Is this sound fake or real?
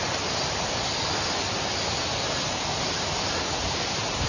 real